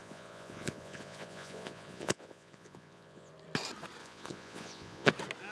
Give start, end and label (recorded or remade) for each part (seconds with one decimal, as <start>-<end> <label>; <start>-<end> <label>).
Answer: 0.0-3.3 remade; 3.3-4.0 recorded; 4.0-5.1 remade; 5.1-5.5 recorded